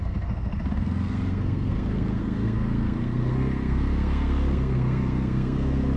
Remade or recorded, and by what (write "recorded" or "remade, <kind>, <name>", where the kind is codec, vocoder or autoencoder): remade, codec, SNAC